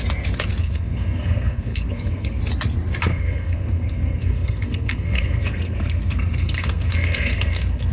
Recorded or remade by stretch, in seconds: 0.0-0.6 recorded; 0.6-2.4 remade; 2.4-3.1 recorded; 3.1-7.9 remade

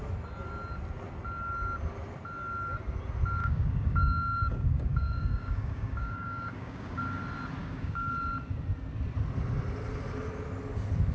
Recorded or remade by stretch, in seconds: 0.0-3.4 recorded; 3.4-7.0 remade; 7.0-7.6 recorded; 7.6-8.1 remade; 8.1-11.1 recorded

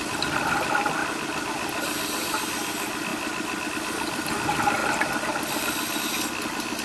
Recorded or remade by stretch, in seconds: 0.0-1.0 recorded; 1.0-2.3 remade; 2.3-3.1 recorded; 3.1-3.7 remade; 3.7-4.8 recorded; 4.8-6.0 remade; 6.0-6.8 recorded

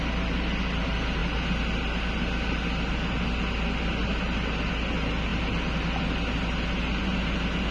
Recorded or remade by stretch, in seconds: 0.0-7.7 recorded

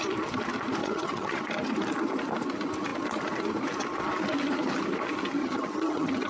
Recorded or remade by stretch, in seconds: 0.0-0.8 recorded; 0.8-1.4 remade; 1.4-5.4 recorded; 5.4-6.3 remade

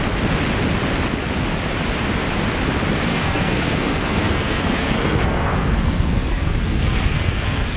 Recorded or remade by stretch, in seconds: 0.0-3.1 recorded; 3.1-7.8 remade

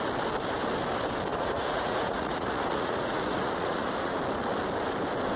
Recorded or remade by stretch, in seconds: 0.0-1.3 recorded; 1.3-4.2 remade; 4.2-5.4 recorded